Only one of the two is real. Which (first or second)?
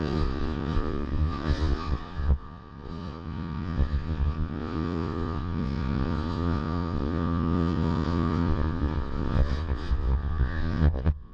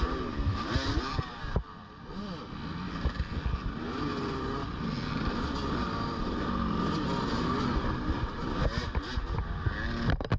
second